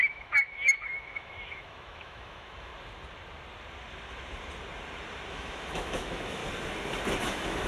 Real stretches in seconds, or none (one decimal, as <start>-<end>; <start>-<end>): 2.7-5.3; 6.4-7.2